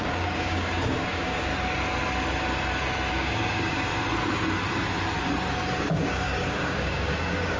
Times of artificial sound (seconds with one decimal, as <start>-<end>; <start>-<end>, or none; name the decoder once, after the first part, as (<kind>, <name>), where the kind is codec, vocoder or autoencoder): 0.0-1.5 (codec, DAC); 3.1-3.9; 5.7-7.6